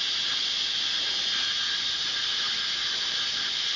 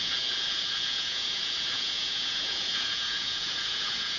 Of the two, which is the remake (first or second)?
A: second